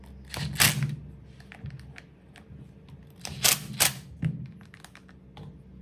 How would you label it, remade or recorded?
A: recorded